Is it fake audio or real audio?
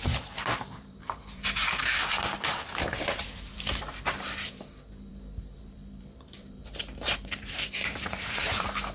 fake